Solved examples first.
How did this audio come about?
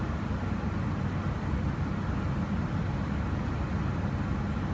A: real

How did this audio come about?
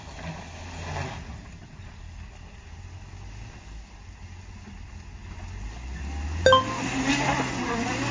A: real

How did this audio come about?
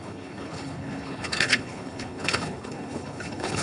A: fake